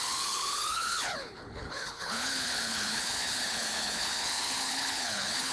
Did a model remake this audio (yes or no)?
yes